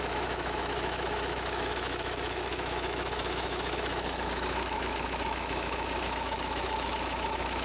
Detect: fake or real fake